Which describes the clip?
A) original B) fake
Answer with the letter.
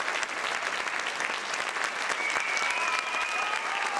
A